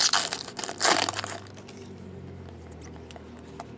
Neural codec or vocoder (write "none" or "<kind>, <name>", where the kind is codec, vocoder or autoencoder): none